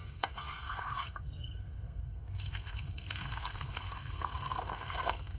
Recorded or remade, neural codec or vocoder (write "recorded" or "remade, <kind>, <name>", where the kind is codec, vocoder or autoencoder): remade, codec, SNAC